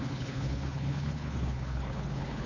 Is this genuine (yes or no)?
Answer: no